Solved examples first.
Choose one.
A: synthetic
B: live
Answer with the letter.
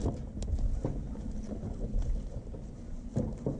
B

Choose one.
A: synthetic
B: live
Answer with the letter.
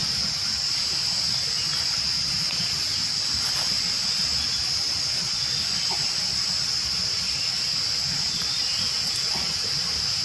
B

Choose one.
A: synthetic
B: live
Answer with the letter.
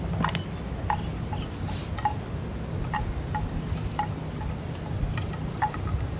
B